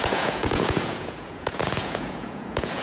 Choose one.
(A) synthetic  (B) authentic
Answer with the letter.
A